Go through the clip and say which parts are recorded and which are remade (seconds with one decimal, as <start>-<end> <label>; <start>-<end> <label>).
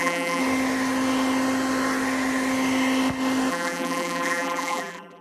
0.0-0.4 remade; 0.4-3.5 recorded; 3.5-5.2 remade